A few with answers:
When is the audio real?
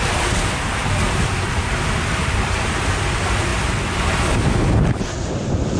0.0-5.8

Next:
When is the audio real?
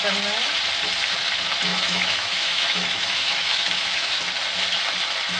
0.0-1.7; 4.2-5.4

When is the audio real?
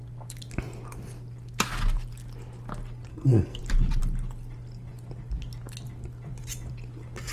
0.0-3.1; 3.6-7.3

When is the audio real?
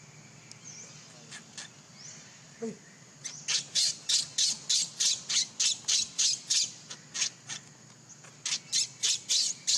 0.0-9.8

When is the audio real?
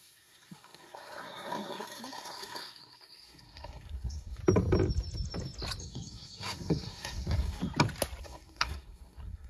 4.4-5.8; 7.6-8.2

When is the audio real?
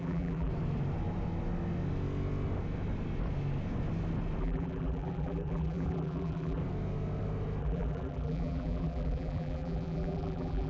0.5-4.4; 6.6-7.6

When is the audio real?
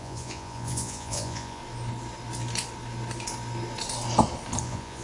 1.6-4.6